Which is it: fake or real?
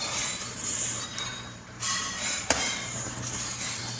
fake